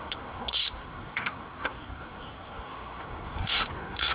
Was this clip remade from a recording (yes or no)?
yes